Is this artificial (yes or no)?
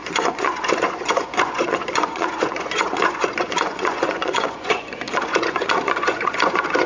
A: yes